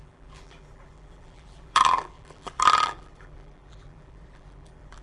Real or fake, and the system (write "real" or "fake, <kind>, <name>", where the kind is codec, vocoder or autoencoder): fake, vocoder, BigVGAN v2